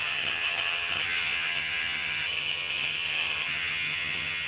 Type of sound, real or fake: fake